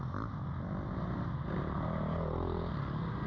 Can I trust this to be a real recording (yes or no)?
yes